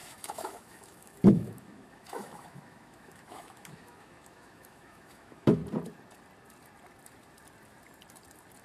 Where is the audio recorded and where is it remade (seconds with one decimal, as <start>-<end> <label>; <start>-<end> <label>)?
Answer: 0.0-5.6 remade; 5.6-8.6 recorded